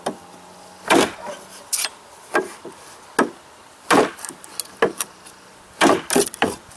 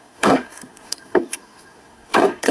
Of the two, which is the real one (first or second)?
first